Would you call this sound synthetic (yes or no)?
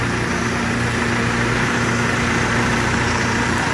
yes